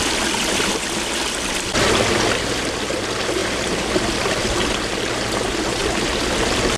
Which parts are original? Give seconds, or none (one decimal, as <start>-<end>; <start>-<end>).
2.1-6.8